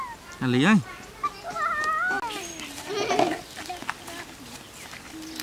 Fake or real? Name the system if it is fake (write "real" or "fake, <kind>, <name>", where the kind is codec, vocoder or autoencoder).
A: real